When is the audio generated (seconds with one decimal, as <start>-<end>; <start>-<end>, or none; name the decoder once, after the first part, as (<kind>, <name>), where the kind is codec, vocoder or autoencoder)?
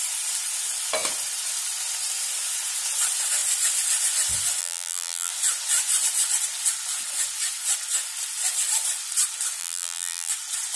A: 4.6-5.3 (vocoder, BigVGAN v2); 9.6-10.3